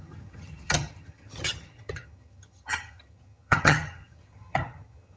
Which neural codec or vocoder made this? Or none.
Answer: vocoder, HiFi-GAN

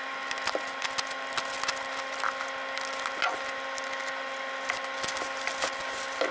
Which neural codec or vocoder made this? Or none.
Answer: none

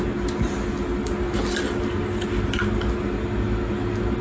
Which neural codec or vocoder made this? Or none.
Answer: none